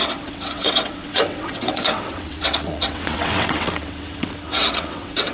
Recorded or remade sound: remade